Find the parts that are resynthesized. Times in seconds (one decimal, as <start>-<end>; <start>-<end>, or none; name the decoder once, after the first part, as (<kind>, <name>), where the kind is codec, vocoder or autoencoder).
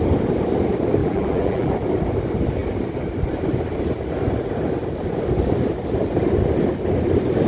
1.0-1.7 (vocoder, BigVGAN v2)